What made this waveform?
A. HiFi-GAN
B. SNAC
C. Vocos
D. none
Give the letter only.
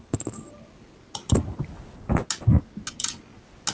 D